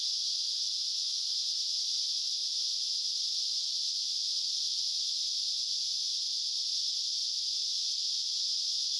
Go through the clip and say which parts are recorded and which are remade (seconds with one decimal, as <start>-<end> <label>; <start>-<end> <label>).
0.0-9.0 recorded